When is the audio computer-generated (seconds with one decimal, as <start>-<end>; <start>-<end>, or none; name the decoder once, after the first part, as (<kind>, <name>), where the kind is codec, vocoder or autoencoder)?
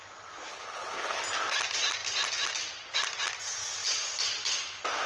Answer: 0.5-1.2 (codec, HILCodec)